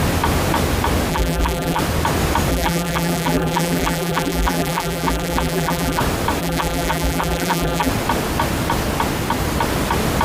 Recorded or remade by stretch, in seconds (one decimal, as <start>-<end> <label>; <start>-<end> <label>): 0.0-1.1 recorded; 1.1-1.8 remade; 1.8-2.5 recorded; 2.5-6.0 remade; 6.0-6.4 recorded; 6.4-7.9 remade; 7.9-10.2 recorded